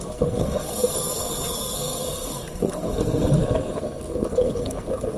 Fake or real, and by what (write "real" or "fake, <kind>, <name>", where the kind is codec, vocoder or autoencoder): fake, codec, SNAC